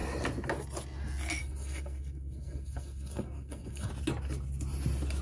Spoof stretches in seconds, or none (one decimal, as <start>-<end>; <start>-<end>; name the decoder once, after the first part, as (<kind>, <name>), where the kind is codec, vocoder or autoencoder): 1.4-3.9 (codec, SNAC)